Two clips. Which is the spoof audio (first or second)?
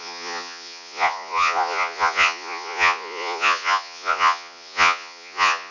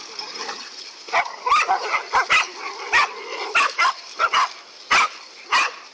first